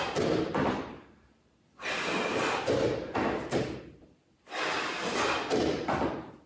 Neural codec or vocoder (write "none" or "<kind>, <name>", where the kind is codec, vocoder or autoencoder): vocoder, BigVGAN v2